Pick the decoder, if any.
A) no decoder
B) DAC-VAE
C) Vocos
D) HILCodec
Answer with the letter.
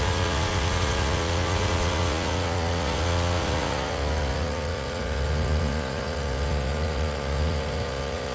C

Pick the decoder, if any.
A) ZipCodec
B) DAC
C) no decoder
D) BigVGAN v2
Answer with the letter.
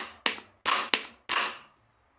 C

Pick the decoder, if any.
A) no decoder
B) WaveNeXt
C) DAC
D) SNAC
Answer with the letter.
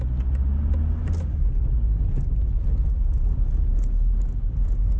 A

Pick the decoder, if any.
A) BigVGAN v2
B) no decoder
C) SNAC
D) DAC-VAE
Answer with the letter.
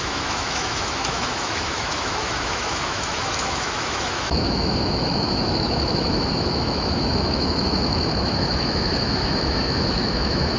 D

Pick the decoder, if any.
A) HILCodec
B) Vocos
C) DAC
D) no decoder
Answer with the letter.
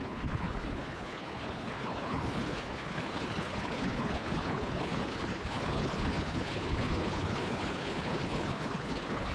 A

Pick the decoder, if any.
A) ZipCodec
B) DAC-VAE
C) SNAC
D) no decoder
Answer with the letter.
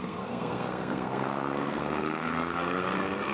C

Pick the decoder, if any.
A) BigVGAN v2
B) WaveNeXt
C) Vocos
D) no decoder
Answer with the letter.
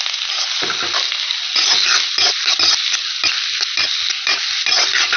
D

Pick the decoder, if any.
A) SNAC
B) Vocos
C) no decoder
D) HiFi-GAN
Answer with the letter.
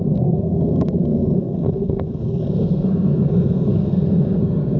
A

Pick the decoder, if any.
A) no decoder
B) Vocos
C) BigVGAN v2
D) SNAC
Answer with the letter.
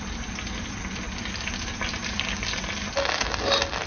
A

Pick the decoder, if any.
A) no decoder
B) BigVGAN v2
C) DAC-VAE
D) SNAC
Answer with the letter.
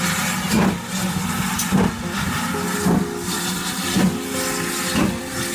A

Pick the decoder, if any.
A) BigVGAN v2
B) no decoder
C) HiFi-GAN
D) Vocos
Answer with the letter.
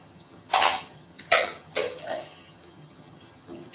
C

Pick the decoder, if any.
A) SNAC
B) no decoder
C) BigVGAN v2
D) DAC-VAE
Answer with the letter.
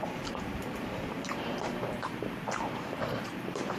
C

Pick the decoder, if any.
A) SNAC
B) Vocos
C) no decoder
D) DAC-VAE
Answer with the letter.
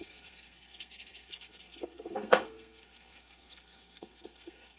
A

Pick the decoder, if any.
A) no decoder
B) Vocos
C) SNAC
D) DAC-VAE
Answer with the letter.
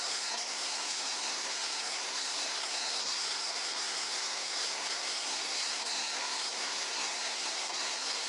C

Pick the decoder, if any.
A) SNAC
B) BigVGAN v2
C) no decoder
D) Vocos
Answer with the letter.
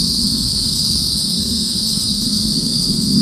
A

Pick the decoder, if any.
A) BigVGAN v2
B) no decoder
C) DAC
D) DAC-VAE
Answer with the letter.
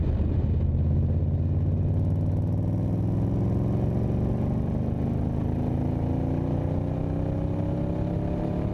B